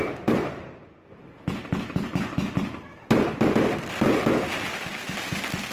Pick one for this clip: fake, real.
real